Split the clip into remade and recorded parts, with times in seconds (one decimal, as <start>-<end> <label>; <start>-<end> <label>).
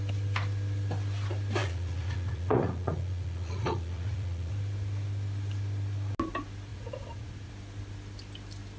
0.0-1.6 recorded; 1.6-4.5 remade; 4.5-6.7 recorded; 6.7-7.5 remade; 7.5-8.8 recorded